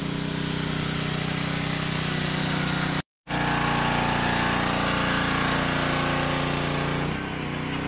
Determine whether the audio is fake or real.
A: real